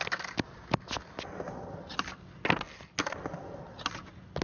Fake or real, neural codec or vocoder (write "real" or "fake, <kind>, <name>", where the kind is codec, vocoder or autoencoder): real